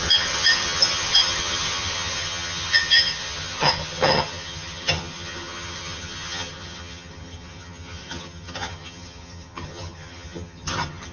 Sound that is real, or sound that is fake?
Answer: fake